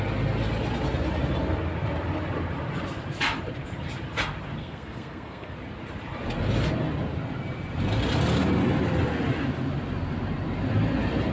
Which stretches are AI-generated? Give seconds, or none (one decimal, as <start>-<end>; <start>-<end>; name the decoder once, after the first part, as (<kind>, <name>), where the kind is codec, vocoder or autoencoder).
4.6-5.5 (codec, SNAC)